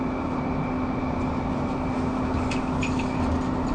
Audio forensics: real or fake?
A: real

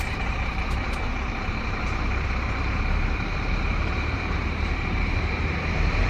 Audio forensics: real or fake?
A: fake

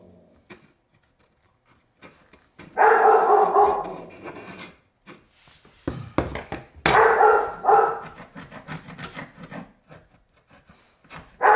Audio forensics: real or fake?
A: real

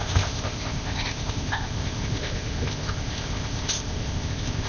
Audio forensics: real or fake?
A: fake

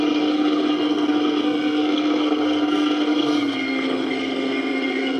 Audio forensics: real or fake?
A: fake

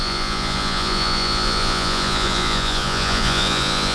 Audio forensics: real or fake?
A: fake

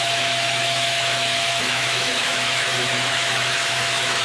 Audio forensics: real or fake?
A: fake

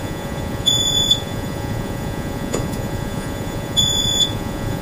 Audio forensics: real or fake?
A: fake